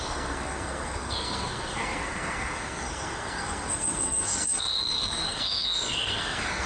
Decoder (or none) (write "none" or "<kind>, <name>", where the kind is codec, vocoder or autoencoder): codec, SNAC